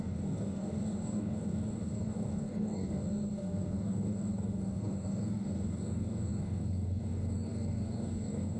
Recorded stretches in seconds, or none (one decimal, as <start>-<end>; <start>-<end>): none